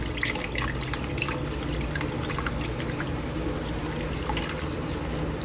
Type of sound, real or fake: real